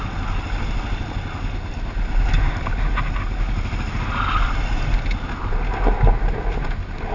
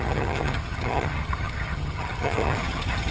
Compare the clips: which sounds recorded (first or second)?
first